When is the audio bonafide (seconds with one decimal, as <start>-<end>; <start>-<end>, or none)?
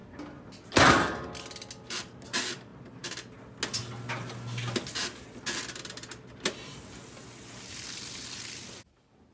0.0-9.3